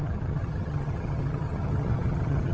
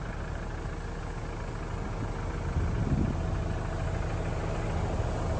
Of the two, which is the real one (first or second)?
second